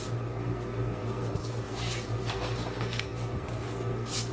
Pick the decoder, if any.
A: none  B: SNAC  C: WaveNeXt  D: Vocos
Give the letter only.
B